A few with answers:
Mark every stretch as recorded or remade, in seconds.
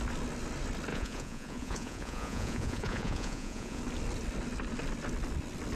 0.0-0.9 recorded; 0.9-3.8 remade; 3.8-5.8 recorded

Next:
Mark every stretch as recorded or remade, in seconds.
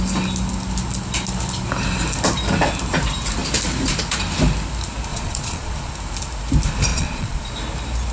0.0-5.1 recorded; 5.1-5.9 remade; 5.9-6.9 recorded; 6.9-7.5 remade; 7.5-8.1 recorded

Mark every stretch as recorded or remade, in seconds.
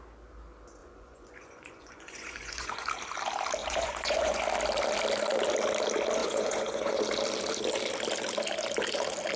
0.0-0.8 recorded; 0.8-2.9 remade; 2.9-3.6 recorded; 3.6-4.4 remade; 4.4-6.2 recorded; 6.2-7.0 remade; 7.0-9.4 recorded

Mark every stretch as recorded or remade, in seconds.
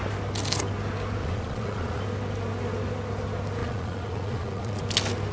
0.0-1.2 recorded; 1.2-2.0 remade; 2.0-3.6 recorded; 3.6-4.8 remade; 4.8-5.3 recorded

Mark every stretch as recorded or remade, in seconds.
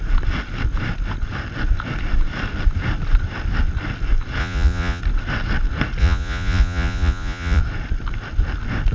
0.0-4.4 recorded; 4.4-5.0 remade; 5.0-6.0 recorded; 6.0-7.6 remade; 7.6-8.9 recorded